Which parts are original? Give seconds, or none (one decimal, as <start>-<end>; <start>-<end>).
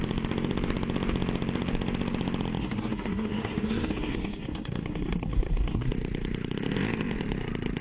0.0-2.6; 5.9-7.8